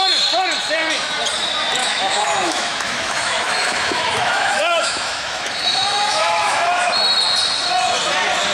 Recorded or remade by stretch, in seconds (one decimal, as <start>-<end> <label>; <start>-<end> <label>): 0.0-1.8 recorded; 1.8-6.9 remade; 6.9-8.5 recorded